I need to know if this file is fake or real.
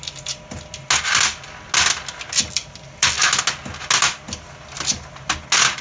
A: real